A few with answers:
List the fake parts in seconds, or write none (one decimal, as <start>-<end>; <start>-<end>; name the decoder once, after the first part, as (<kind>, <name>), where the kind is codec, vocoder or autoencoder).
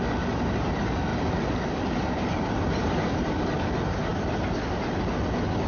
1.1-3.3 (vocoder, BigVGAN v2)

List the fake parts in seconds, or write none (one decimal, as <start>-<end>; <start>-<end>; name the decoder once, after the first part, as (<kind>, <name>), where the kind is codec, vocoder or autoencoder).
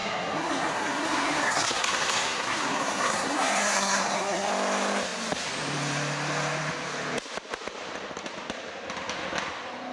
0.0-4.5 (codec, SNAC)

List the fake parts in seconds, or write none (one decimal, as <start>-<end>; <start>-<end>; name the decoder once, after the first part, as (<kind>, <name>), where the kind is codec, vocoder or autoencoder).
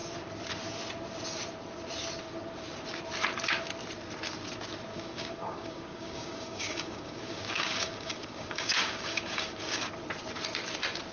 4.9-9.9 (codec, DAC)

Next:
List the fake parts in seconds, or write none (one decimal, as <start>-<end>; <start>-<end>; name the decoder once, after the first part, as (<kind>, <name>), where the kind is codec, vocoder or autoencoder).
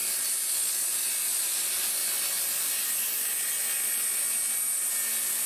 none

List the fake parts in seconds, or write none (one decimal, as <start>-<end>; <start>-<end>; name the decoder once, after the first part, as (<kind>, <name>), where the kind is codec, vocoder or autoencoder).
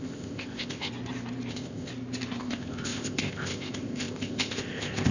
0.0-0.9 (codec, ZipCodec); 1.5-1.9; 2.4-5.1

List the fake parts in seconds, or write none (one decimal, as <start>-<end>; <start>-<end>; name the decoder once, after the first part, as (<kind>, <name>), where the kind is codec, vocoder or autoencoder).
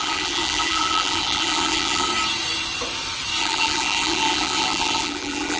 0.0-2.1 (vocoder, BigVGAN v2); 3.4-5.6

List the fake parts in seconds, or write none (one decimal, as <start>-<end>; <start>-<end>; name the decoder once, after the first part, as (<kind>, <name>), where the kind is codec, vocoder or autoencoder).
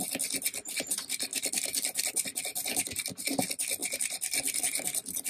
0.0-1.3 (vocoder, BigVGAN v2); 2.1-3.8; 4.6-5.3